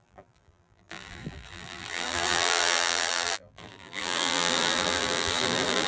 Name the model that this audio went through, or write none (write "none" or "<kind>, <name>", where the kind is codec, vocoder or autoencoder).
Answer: vocoder, BigVGAN v2